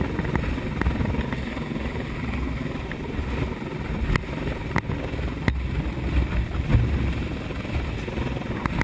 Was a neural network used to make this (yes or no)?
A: no